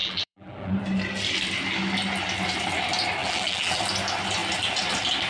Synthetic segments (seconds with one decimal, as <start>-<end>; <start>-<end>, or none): 0.0-0.7; 3.2-3.8